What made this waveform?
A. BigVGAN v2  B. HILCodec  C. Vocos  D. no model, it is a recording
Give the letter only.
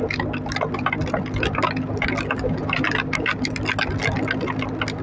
D